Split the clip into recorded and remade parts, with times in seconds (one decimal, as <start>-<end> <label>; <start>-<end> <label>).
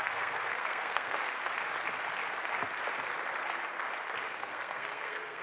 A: 0.0-1.2 remade; 1.2-4.4 recorded; 4.4-5.4 remade